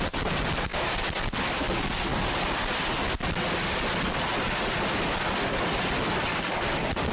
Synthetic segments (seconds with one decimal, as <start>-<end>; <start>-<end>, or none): none

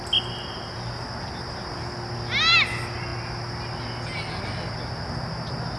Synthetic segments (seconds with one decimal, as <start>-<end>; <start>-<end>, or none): none

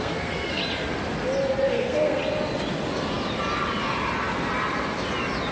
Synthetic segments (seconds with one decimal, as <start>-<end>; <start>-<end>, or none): 0.0-0.6; 1.7-2.2

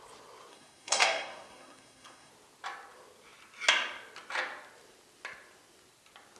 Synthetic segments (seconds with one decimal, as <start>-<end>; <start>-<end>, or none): 0.5-2.3

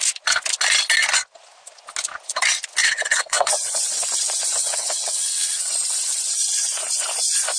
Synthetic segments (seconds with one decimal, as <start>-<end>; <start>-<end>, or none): 2.8-3.8; 4.6-5.7

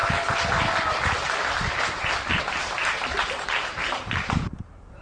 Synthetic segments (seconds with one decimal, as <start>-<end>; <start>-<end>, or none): 2.4-5.0

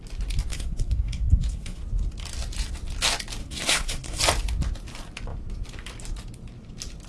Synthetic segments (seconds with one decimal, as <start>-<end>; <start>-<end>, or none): 0.5-1.8; 3.4-4.2